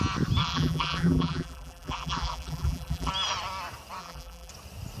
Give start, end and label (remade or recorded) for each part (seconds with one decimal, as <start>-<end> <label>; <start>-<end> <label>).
0.0-0.4 recorded; 0.4-3.1 remade; 3.1-4.0 recorded; 4.0-4.5 remade; 4.5-5.0 recorded